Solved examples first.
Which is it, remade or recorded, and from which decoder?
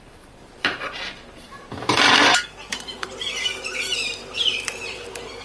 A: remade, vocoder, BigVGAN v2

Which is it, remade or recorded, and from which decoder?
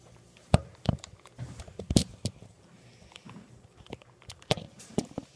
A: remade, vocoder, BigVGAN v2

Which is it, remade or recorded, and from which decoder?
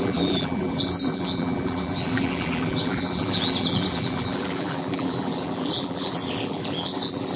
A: remade, vocoder, BigVGAN v2